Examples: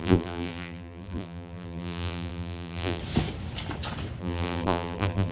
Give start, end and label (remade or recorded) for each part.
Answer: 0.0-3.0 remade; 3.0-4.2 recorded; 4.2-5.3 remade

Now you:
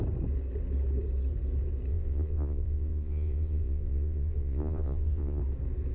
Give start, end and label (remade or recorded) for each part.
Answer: 0.0-1.9 recorded; 1.9-5.4 remade; 5.4-5.9 recorded

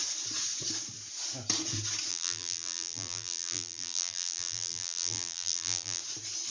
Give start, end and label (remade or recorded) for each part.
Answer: 0.0-2.1 recorded; 2.1-6.0 remade; 6.0-6.5 recorded